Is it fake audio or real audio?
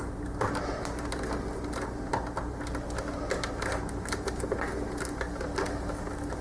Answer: real